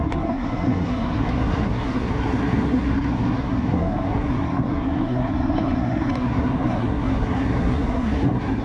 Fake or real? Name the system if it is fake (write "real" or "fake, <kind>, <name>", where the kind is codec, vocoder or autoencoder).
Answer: fake, codec, SNAC